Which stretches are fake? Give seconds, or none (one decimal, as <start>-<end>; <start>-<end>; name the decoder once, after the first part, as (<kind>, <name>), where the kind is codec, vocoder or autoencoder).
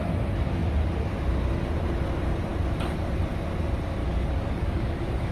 4.0-5.3 (codec, DAC)